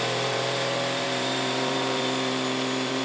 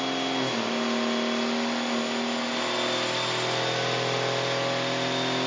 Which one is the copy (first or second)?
first